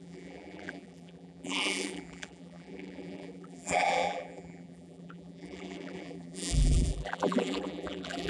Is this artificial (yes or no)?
yes